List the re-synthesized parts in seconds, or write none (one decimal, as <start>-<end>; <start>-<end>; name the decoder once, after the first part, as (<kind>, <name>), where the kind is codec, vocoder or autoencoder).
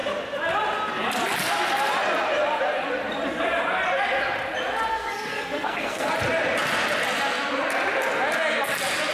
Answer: 4.9-6.1 (codec, SNAC)